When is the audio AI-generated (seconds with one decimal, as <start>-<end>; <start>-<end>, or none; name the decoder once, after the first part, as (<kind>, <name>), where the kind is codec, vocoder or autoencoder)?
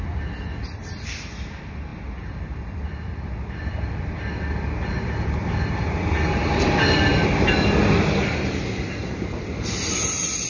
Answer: none